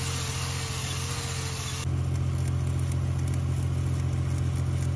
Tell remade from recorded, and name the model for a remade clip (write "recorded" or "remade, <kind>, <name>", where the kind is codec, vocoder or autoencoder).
recorded